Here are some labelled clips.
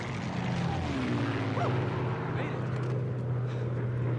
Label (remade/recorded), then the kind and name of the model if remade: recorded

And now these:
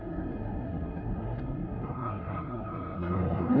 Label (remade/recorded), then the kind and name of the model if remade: remade, codec, SNAC